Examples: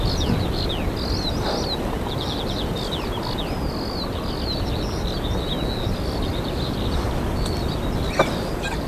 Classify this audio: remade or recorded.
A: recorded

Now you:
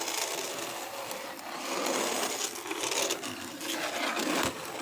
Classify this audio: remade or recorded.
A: recorded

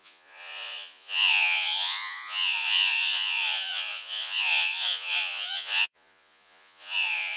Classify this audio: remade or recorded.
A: remade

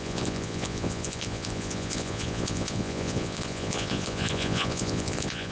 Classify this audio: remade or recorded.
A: remade